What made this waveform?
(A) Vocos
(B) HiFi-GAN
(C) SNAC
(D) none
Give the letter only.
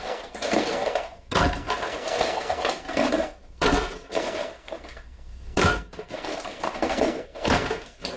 C